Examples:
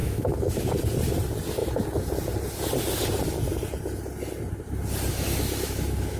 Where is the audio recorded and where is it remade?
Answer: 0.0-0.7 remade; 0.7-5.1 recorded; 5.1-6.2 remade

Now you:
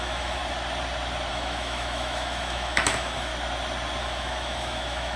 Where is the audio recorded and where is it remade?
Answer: 0.0-0.4 remade; 0.4-1.3 recorded; 1.3-3.3 remade; 3.3-4.0 recorded; 4.0-5.2 remade

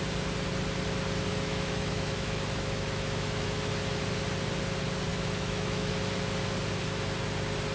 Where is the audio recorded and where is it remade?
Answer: 0.0-1.3 recorded; 1.3-3.7 remade; 3.7-5.1 recorded; 5.1-5.9 remade; 5.9-7.7 recorded